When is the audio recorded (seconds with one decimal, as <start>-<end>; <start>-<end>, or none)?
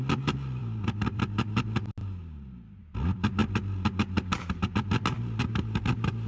0.0-0.6; 1.2-2.0; 2.8-6.3